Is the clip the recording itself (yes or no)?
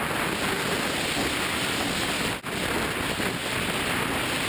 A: yes